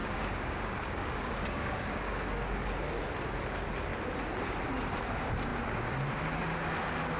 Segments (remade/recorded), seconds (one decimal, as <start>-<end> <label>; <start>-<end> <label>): 0.0-2.7 remade; 2.7-7.2 recorded